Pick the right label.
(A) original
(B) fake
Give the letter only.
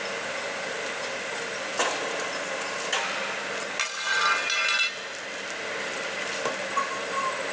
A